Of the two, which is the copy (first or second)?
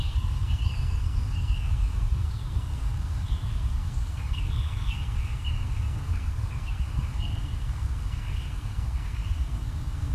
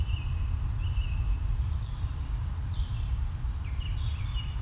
first